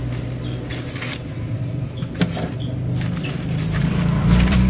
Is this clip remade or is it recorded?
remade